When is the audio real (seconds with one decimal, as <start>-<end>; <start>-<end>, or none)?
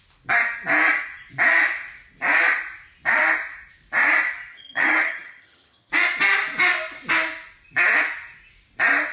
0.0-4.5; 5.9-9.1